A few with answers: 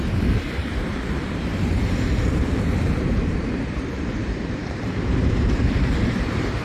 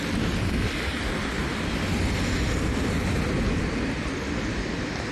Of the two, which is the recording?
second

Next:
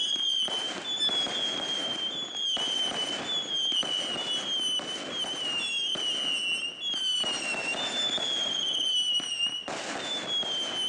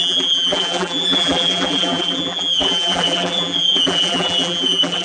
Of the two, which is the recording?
first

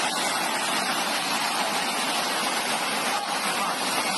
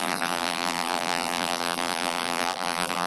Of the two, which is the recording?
first